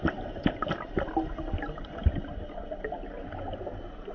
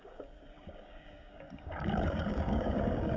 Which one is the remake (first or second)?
second